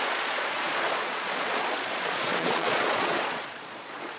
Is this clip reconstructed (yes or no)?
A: yes